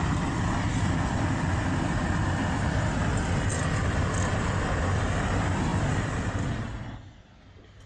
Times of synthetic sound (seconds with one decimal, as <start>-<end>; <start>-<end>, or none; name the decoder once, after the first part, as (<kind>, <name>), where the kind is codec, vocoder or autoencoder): none